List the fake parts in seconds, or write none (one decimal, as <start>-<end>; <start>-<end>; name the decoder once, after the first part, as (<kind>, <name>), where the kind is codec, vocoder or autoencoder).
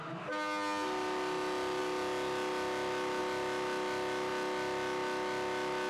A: none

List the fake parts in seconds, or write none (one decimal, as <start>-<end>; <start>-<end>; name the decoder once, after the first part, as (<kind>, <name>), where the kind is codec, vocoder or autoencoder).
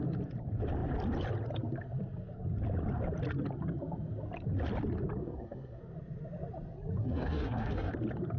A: 5.2-5.8 (codec, SNAC); 7.0-7.9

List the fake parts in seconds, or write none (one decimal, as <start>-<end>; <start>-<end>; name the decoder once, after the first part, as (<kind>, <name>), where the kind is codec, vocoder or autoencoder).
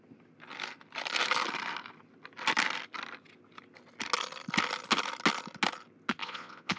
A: 6.2-6.8 (vocoder, Vocos)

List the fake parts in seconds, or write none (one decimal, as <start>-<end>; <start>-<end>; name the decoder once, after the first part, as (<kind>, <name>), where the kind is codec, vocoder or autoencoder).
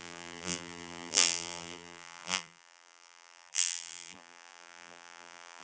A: 0.0-5.6 (vocoder, BigVGAN v2)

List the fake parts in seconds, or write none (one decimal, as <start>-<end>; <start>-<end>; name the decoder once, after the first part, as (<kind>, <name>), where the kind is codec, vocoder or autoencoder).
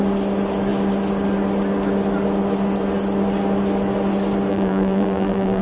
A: 4.5-5.6 (vocoder, BigVGAN v2)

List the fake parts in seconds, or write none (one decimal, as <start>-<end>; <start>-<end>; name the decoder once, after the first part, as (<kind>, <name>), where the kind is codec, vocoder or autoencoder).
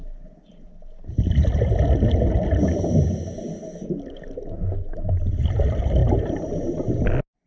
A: 6.0-6.6 (vocoder, BigVGAN v2)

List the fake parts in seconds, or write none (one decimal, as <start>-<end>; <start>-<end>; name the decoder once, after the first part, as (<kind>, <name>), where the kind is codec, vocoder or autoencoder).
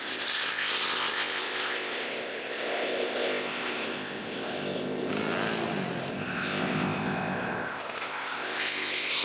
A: 0.0-5.1 (codec, ZipCodec); 6.1-9.2